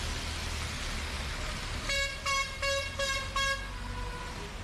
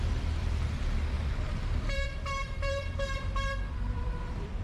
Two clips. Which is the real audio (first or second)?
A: first